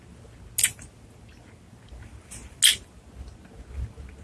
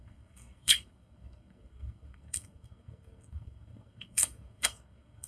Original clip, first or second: first